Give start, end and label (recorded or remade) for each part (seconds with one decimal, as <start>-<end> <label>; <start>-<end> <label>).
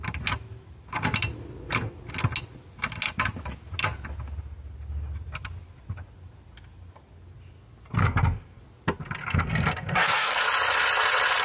0.0-8.0 recorded; 8.0-8.6 remade; 8.6-9.2 recorded; 9.2-10.4 remade; 10.4-11.4 recorded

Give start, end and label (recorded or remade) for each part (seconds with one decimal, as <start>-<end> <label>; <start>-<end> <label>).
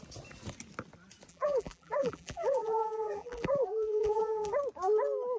0.0-1.3 recorded; 1.3-4.5 remade; 4.5-5.4 recorded